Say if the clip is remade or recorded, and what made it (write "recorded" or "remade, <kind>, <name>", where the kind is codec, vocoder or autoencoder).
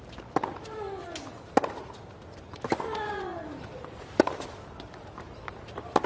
recorded